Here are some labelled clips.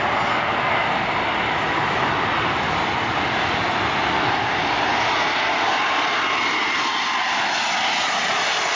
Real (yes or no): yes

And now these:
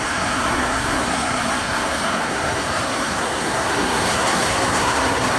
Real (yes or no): no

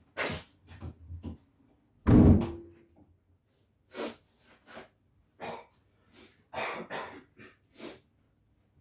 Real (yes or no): yes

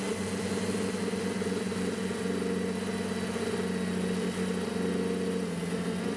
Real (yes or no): yes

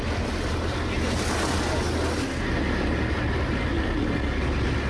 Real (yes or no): yes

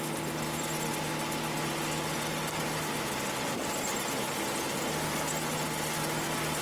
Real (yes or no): yes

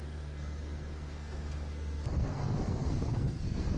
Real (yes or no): no